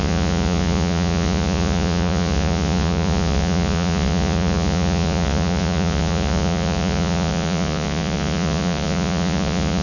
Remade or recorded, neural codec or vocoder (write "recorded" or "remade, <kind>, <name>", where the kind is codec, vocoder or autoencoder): remade, vocoder, Vocos